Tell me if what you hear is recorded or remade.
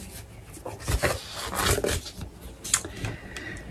recorded